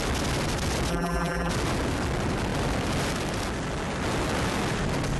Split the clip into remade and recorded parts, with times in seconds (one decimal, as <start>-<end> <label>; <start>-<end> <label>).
0.0-0.9 recorded; 0.9-1.5 remade; 1.5-5.2 recorded